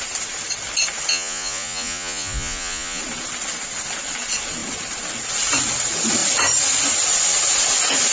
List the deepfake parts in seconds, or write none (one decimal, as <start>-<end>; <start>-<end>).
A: 1.1-3.0